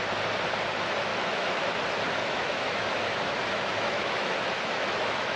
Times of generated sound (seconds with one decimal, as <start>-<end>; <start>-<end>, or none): 1.1-1.7; 2.2-5.4